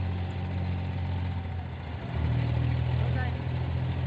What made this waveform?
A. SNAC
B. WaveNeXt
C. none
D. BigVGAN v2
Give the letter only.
C